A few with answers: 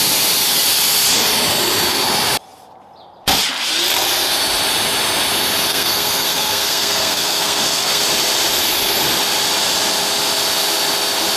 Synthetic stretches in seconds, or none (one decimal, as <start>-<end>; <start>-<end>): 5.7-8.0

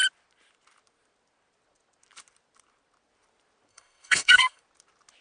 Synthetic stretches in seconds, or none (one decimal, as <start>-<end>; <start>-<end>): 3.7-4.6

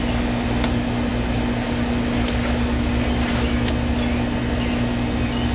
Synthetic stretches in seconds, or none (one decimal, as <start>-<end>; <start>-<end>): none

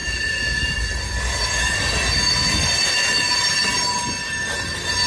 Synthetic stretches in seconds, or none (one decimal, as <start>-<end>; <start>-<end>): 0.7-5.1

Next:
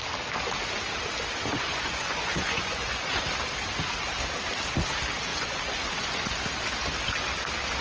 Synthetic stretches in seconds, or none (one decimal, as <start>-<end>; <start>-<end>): 1.4-3.2; 5.3-6.4

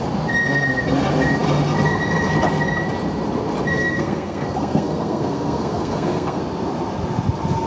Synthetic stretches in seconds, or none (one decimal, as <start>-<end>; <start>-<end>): 3.7-6.4

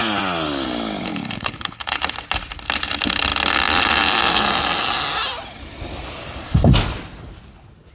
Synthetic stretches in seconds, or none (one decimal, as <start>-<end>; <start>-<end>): 1.0-2.0